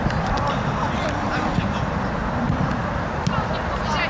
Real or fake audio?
fake